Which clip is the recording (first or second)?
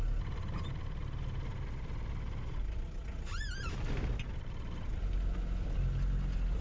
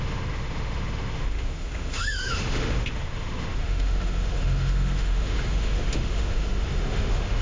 first